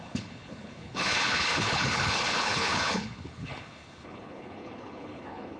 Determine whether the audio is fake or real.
fake